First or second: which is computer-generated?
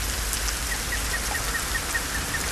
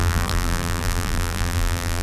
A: second